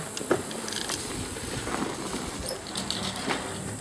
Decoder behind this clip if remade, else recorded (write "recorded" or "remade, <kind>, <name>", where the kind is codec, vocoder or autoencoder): recorded